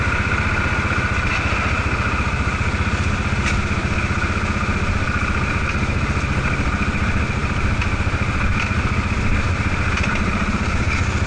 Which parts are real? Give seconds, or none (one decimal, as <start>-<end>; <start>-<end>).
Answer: 0.0-11.3